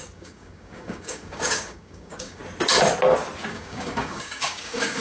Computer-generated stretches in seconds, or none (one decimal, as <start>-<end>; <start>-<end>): 0.0-2.4; 3.5-5.0